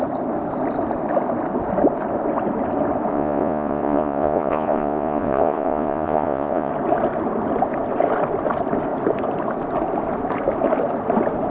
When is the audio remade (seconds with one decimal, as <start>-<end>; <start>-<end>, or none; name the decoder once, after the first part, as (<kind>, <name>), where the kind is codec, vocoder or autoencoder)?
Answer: 3.1-6.7 (vocoder, Vocos)